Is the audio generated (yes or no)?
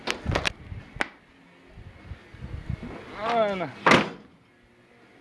no